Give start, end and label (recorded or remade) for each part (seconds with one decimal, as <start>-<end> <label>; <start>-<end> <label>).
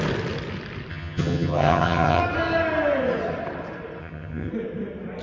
0.0-0.9 recorded; 0.9-2.2 remade; 2.2-4.0 recorded; 4.0-4.5 remade; 4.5-5.2 recorded